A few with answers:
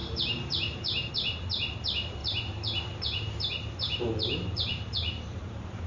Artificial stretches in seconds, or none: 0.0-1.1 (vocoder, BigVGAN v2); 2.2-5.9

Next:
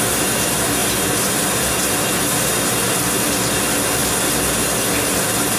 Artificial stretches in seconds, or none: none

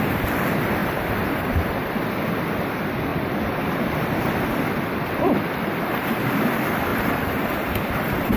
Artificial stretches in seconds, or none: 0.8-1.8 (vocoder, BigVGAN v2); 3.1-5.7; 6.9-7.9

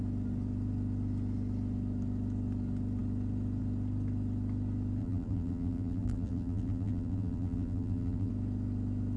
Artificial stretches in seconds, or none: 5.0-8.3 (vocoder, BigVGAN v2)

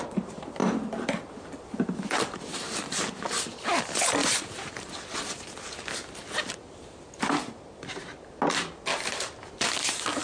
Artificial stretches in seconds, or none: 0.6-3.4 (vocoder, BigVGAN v2); 4.2-4.9; 8.9-10.2